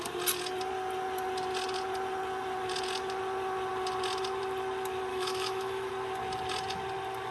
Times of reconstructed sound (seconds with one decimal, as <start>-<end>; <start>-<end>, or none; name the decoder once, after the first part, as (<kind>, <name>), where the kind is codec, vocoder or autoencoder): 5.1-5.9 (autoencoder, DAC-VAE)

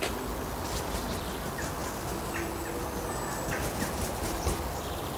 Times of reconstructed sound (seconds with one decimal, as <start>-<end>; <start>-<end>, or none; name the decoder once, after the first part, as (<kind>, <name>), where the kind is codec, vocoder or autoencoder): none

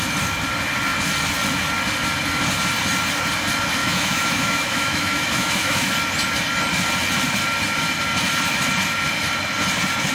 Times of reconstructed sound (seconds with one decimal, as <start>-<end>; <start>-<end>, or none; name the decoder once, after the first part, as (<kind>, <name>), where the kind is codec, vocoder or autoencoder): 3.8-5.9 (autoencoder, DAC-VAE)

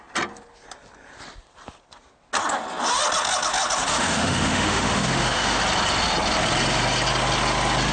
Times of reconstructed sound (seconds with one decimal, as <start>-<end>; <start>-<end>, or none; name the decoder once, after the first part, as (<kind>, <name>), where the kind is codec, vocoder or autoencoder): 3.9-5.6 (autoencoder, DAC-VAE)

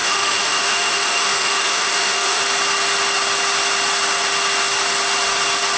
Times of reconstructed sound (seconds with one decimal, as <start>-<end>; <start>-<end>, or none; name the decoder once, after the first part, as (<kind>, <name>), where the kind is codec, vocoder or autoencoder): 0.0-2.4 (autoencoder, DAC-VAE)